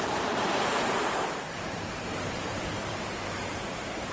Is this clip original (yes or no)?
no